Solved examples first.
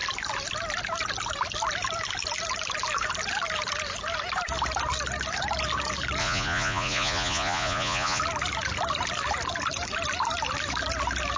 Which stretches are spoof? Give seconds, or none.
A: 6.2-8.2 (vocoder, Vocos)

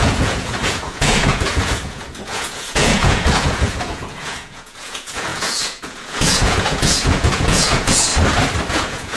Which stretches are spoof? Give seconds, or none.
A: 0.0-8.1 (vocoder, Vocos); 8.7-9.2

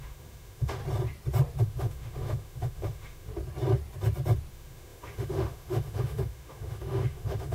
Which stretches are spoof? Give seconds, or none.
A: 0.0-0.8 (autoencoder, DAC-VAE); 1.6-3.3; 4.5-7.5

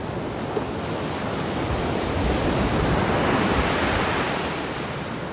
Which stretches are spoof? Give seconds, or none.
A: none